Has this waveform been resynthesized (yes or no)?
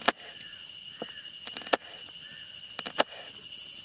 no